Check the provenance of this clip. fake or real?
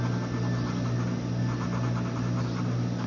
real